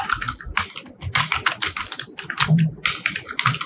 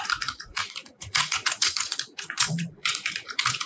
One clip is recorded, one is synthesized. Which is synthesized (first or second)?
second